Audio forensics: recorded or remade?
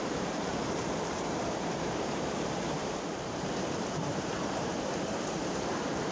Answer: remade